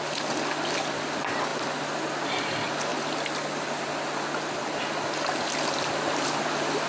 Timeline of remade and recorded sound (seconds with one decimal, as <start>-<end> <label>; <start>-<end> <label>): 0.0-6.9 recorded